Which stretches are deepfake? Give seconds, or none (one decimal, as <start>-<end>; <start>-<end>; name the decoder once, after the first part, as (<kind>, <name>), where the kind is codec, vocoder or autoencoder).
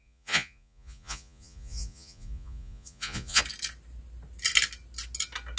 0.0-3.4 (vocoder, Vocos)